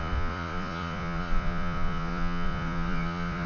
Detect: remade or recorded remade